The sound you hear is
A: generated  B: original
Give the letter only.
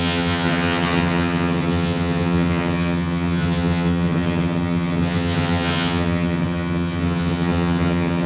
A